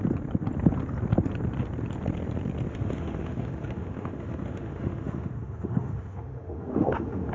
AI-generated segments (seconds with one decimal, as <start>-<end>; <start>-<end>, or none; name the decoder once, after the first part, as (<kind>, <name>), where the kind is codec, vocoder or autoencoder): 2.7-7.3 (autoencoder, DAC-VAE)